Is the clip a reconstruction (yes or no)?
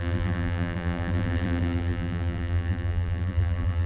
yes